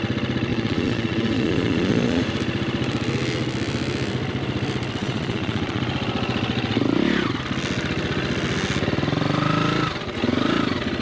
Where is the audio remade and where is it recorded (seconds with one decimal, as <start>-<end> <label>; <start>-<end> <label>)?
0.0-0.5 recorded; 0.5-2.2 remade; 2.2-5.0 recorded; 5.0-5.8 remade; 5.8-11.0 recorded